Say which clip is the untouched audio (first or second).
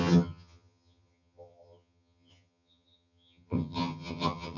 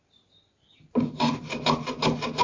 second